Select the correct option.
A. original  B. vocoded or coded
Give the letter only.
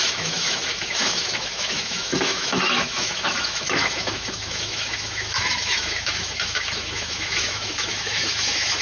B